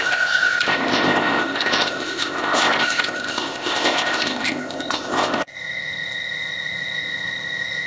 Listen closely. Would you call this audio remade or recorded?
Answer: remade